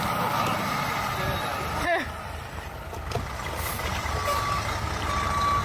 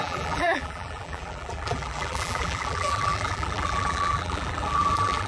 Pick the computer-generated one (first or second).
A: second